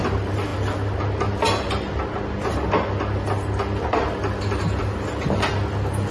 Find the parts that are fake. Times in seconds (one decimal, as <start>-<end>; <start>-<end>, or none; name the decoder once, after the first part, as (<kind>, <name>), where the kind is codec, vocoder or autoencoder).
none